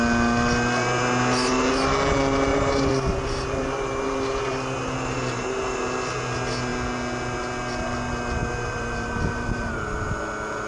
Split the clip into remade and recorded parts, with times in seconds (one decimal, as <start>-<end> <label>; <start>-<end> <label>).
0.0-2.5 recorded; 2.5-5.6 remade; 5.6-8.4 recorded; 8.4-10.2 remade; 10.2-10.7 recorded